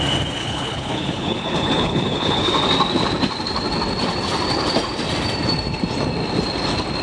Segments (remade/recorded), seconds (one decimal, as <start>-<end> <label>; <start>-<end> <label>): 0.0-0.4 recorded; 0.4-2.4 remade; 2.4-7.0 recorded